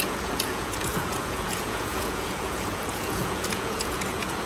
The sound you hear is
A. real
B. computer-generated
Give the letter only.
B